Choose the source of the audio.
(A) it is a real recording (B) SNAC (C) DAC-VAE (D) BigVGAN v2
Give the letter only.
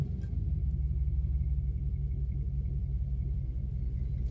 A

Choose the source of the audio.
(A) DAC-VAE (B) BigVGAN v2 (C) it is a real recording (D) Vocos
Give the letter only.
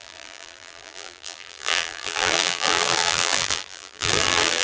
B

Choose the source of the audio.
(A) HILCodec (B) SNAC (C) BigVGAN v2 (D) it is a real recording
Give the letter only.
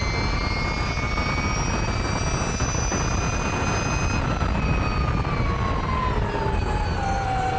D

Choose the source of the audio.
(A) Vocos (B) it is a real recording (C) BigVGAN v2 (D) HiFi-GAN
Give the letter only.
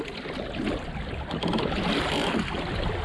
B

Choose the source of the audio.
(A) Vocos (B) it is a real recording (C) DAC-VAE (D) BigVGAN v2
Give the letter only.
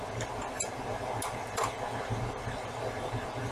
B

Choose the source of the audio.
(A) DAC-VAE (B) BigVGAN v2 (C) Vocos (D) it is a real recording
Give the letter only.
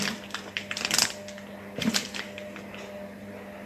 B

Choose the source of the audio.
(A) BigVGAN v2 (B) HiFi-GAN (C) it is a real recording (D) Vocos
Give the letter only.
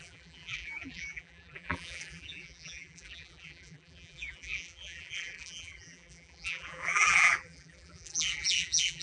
A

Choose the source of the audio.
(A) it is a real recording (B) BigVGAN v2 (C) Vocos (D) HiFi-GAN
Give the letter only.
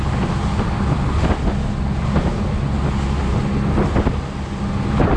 A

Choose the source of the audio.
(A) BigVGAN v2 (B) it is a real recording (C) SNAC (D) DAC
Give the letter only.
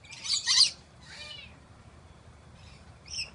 A